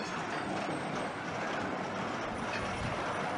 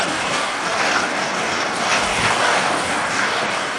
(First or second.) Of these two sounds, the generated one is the second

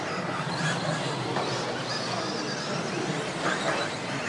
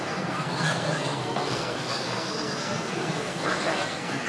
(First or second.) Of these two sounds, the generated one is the second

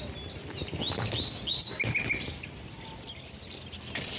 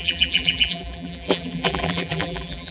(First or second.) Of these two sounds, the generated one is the second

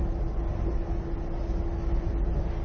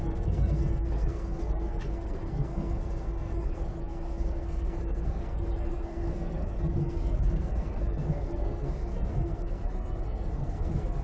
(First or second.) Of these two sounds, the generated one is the second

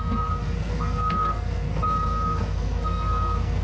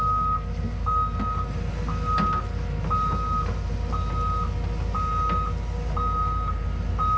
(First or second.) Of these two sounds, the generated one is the first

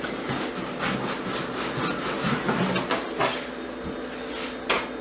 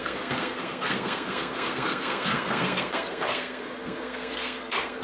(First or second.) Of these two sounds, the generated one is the second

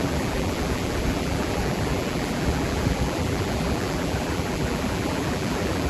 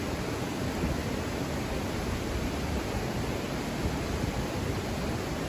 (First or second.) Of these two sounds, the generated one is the first